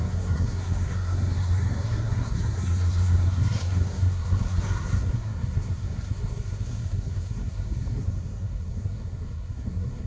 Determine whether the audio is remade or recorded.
remade